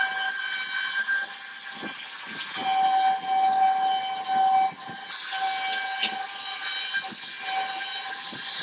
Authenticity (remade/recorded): recorded